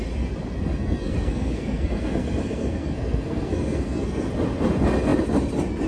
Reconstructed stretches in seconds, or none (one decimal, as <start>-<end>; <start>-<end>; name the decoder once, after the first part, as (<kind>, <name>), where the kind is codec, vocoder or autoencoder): 0.8-4.3 (codec, SNAC)